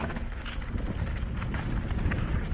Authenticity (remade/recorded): recorded